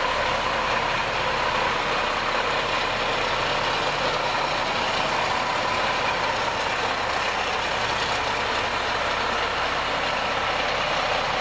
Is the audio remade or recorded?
recorded